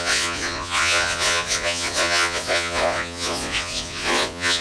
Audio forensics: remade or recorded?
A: remade